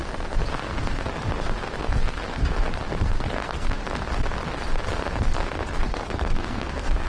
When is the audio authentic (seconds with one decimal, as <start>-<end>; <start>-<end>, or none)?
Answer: 0.0-0.5; 1.0-1.8; 2.2-2.9; 3.8-5.9